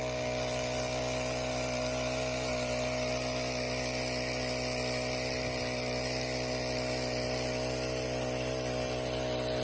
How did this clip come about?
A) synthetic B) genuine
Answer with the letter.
B